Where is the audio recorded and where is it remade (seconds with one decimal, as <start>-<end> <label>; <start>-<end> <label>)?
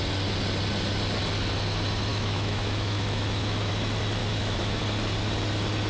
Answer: 0.0-2.1 recorded; 2.1-3.7 remade; 3.7-4.2 recorded; 4.2-4.8 remade; 4.8-5.9 recorded